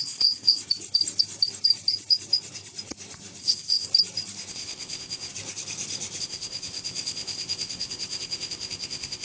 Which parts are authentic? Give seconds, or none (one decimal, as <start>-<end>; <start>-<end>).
0.6-3.4; 3.9-4.5; 5.3-6.2